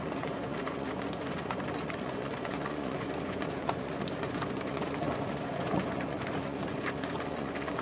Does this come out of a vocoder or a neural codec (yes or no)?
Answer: yes